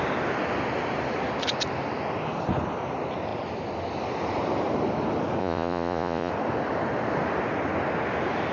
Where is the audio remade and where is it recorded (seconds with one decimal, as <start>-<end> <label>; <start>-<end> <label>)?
0.0-5.4 recorded; 5.4-6.3 remade; 6.3-8.5 recorded